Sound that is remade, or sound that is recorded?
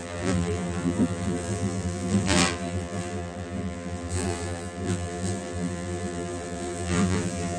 remade